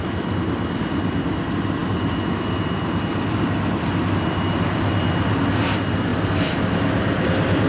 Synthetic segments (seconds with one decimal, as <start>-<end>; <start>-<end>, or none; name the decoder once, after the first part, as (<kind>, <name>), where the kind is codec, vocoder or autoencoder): none